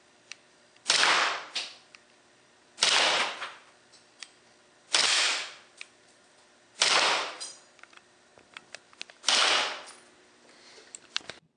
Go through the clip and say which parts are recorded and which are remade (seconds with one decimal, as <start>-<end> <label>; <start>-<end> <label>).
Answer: 0.0-8.3 remade; 8.3-10.2 recorded; 10.2-11.6 remade